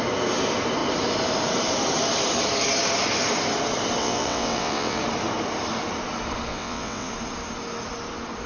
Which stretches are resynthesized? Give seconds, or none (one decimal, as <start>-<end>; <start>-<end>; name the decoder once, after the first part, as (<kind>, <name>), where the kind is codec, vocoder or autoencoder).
4.0-5.0 (vocoder, WaveNeXt); 6.5-7.1